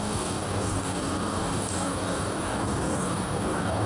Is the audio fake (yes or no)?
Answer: yes